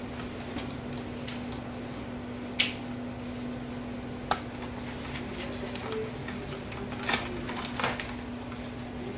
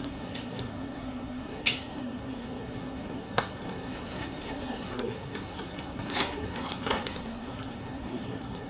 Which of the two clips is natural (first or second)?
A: first